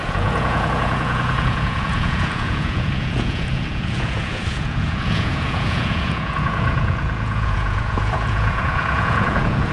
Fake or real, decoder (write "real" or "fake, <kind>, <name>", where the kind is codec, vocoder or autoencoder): fake, vocoder, Vocos